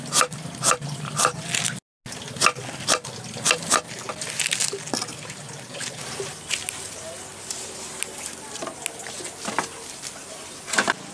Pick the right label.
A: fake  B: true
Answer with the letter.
B